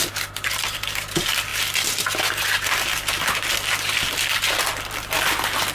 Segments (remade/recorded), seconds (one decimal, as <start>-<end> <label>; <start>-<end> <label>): 0.0-5.7 recorded

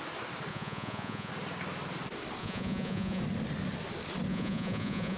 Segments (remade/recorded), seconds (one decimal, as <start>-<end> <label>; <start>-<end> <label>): 0.0-0.5 recorded; 0.5-1.3 remade; 1.3-2.4 recorded; 2.4-3.2 remade; 3.2-4.3 recorded; 4.3-5.2 remade

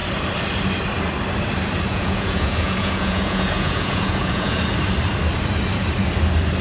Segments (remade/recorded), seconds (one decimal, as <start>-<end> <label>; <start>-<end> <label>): 0.0-1.9 recorded; 1.9-4.6 remade; 4.6-6.6 recorded

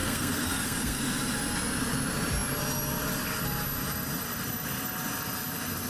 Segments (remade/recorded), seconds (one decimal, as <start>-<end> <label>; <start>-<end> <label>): 0.0-1.0 remade; 1.0-5.9 recorded

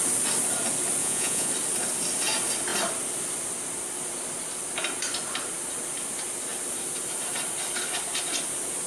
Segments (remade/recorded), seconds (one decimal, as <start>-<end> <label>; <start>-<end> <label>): 0.0-1.0 recorded; 1.0-1.5 remade; 1.5-8.9 recorded

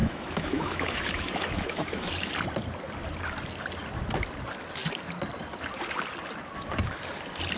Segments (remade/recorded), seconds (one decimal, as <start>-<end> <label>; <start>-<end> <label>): 0.0-2.3 remade; 2.3-7.6 recorded